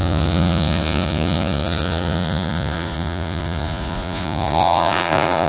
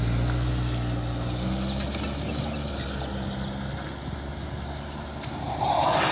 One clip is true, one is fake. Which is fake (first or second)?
first